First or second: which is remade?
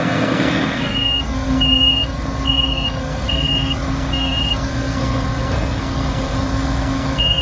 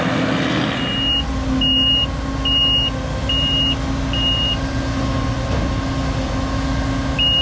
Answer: first